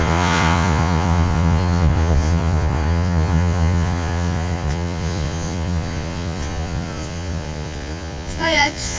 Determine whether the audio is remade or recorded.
remade